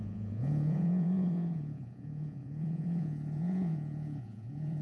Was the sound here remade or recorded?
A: remade